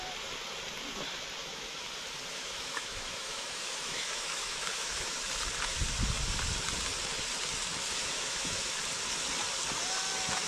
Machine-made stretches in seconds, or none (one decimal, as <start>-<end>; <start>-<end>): 1.4-1.9; 2.3-5.1; 8.0-8.7